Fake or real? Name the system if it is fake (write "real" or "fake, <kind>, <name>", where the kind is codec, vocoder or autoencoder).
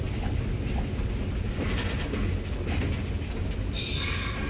real